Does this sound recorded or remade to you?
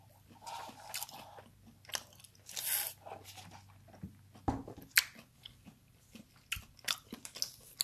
recorded